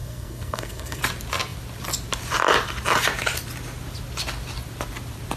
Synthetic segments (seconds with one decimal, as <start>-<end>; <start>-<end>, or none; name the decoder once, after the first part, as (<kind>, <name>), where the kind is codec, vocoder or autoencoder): 0.0-1.0 (codec, SNAC)